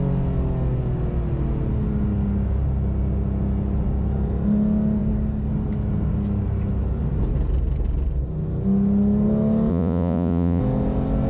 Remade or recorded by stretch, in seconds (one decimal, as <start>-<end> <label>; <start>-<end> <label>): 0.0-9.7 recorded; 9.7-10.6 remade; 10.6-11.3 recorded